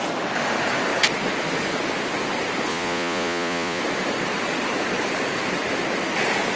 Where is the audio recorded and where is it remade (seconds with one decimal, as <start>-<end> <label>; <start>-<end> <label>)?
0.0-2.7 recorded; 2.7-3.8 remade; 3.8-6.6 recorded